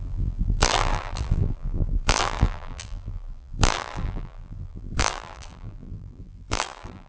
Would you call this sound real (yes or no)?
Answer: no